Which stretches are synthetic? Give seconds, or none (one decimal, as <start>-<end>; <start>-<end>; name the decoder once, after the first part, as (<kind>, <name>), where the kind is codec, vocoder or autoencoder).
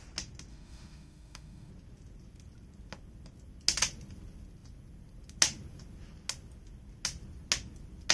0.5-1.7 (autoencoder, DAC-VAE)